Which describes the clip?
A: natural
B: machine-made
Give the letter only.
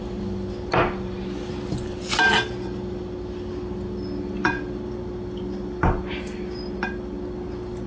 A